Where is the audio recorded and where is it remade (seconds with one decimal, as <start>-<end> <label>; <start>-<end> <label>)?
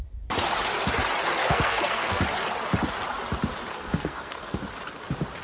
0.0-1.4 recorded; 1.4-2.2 remade; 2.2-3.7 recorded; 3.7-4.6 remade; 4.6-5.4 recorded